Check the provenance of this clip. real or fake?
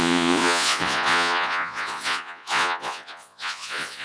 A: fake